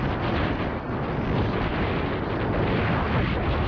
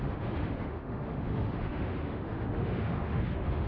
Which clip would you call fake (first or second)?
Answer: second